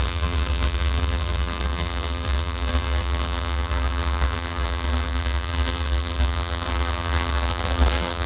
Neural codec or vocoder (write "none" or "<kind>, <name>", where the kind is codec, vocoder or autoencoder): vocoder, BigVGAN v2